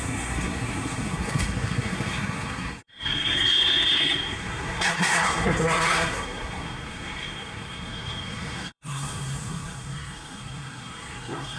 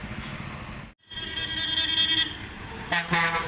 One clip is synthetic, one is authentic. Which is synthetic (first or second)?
first